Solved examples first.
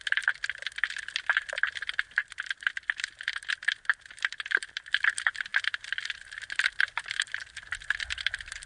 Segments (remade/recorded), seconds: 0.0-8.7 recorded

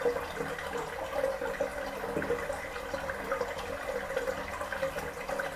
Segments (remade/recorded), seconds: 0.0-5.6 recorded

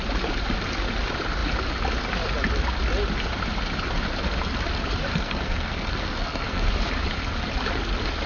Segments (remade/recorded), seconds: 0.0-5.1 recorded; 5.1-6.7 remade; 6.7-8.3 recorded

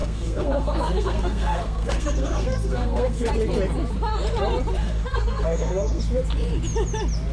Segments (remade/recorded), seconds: 0.0-3.3 remade; 3.3-4.8 recorded; 4.8-6.0 remade; 6.0-7.3 recorded

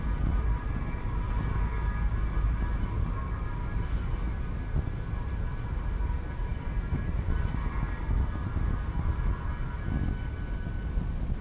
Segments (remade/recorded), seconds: 0.0-11.4 recorded

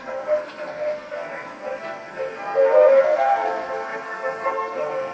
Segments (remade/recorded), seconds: 0.0-5.1 remade

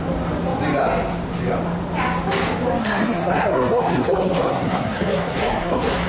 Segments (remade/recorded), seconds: 0.0-2.8 recorded; 2.8-6.1 remade